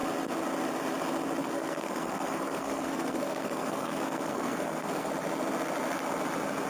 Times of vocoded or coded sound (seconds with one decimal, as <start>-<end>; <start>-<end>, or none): 1.4-5.1